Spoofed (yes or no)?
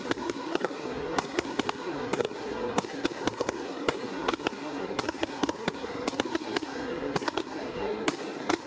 yes